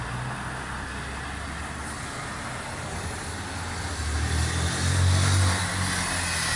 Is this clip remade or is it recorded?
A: recorded